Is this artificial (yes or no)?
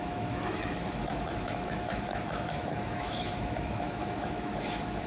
yes